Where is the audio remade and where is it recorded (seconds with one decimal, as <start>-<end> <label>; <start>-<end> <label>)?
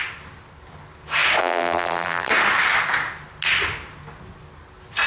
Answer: 0.0-1.4 recorded; 1.4-2.3 remade; 2.3-5.1 recorded